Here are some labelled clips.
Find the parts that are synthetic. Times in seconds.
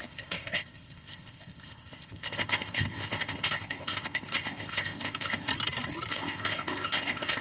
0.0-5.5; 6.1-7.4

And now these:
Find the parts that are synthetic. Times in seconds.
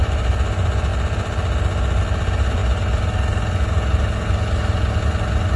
none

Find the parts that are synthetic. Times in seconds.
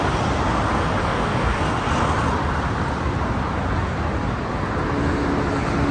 1.0-1.6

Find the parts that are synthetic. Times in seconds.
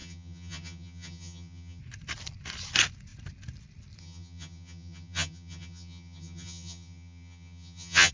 0.0-1.8; 4.0-8.1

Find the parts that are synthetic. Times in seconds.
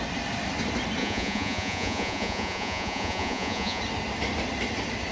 1.0-3.8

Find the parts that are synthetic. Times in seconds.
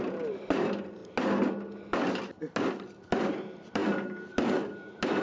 0.0-1.0; 2.7-3.8; 4.3-5.2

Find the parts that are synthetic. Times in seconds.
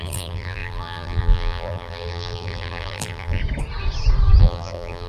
0.0-3.4; 4.4-5.1